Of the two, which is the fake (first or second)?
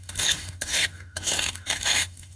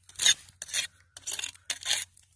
first